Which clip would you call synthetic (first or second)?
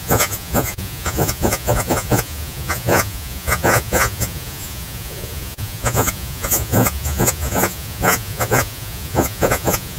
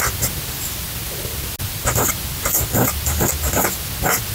first